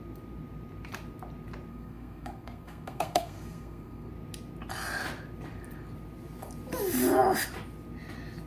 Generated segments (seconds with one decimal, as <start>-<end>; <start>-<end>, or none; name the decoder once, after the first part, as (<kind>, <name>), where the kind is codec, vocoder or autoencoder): 1.7-4.1 (codec, SNAC)